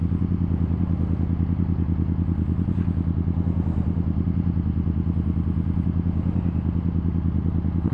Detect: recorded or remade recorded